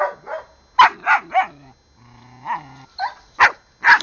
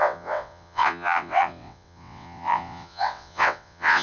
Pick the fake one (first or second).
second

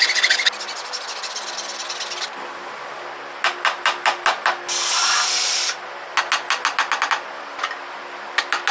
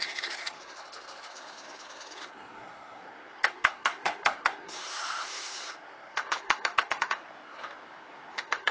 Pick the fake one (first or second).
second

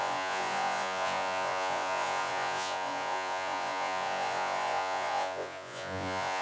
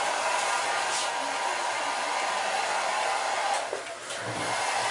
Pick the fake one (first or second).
first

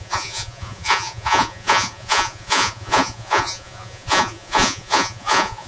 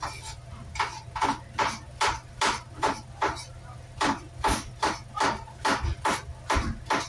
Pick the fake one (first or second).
first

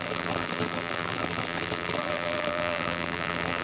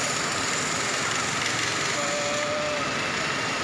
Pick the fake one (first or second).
first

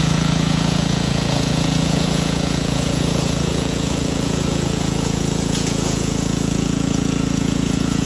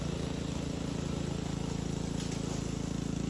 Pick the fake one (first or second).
first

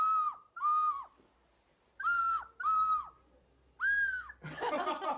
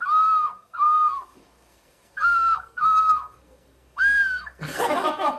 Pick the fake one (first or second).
second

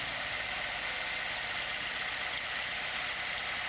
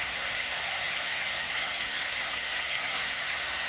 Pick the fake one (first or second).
second